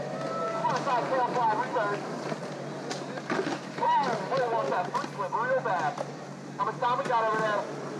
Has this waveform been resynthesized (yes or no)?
no